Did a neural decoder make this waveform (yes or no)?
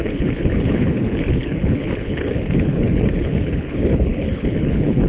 yes